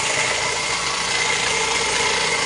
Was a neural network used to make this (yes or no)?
yes